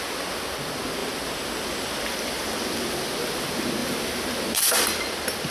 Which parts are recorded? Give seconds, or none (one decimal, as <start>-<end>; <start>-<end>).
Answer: 0.0-3.8; 4.5-5.5